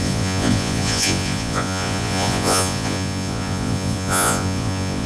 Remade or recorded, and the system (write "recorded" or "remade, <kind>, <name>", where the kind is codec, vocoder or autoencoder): remade, vocoder, Vocos